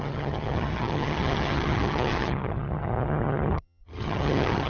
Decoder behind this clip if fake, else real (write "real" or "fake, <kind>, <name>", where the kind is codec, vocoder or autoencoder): fake, vocoder, HiFi-GAN